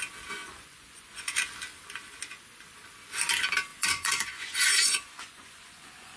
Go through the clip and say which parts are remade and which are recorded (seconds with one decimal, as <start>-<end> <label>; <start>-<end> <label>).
0.0-0.4 recorded; 0.4-1.3 remade; 1.3-3.7 recorded; 3.7-6.2 remade